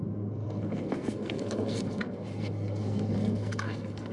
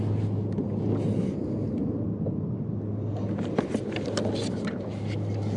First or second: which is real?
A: second